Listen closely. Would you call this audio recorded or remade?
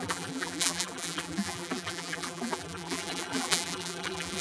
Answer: remade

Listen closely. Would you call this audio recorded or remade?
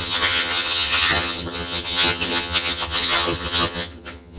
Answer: remade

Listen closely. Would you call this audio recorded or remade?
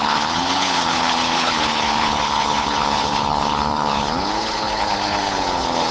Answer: remade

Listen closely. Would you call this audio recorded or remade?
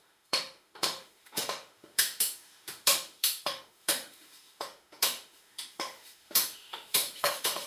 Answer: remade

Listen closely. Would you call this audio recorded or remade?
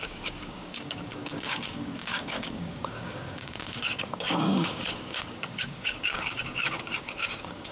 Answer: remade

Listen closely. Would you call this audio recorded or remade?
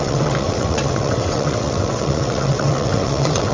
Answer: remade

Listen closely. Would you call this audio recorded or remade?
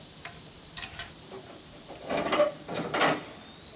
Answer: recorded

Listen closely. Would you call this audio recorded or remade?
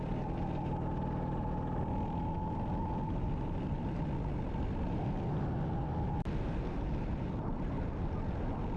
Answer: recorded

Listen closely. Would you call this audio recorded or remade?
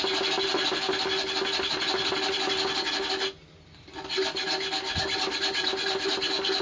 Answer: recorded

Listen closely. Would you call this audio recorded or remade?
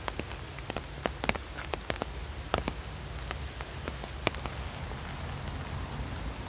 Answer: recorded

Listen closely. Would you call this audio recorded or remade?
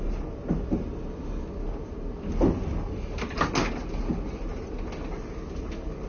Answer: recorded